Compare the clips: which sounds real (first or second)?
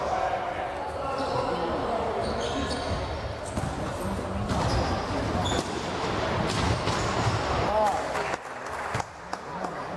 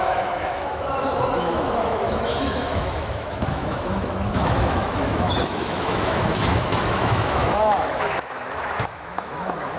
first